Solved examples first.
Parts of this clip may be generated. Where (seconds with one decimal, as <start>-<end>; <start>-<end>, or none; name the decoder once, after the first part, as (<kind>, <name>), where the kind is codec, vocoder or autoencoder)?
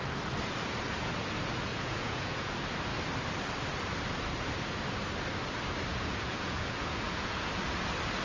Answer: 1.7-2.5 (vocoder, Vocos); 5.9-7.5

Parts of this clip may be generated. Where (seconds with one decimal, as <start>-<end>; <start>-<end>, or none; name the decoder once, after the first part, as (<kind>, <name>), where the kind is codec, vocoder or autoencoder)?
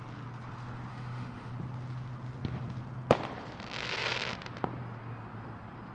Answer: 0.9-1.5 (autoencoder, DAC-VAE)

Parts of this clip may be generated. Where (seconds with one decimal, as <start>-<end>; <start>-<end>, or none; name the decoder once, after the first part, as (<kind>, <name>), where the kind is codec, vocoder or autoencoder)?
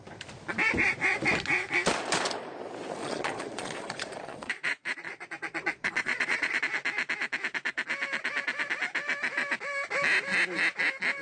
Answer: 3.0-6.6 (vocoder, Vocos)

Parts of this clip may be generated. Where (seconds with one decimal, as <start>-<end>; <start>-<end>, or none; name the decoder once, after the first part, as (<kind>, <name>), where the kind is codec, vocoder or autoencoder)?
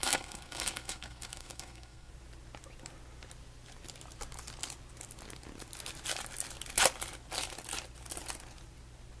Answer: 0.0-2.1 (codec, SNAC)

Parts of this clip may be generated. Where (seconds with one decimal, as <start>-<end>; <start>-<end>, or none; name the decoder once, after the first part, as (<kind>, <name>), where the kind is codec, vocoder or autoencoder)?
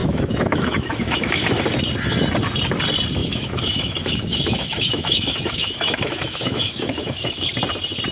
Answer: 0.0-1.6 (autoencoder, DAC-VAE); 3.2-7.5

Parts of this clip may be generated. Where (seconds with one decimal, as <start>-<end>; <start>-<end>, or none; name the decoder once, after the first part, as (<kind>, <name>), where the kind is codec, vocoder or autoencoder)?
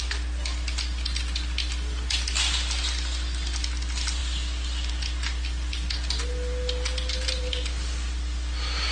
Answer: none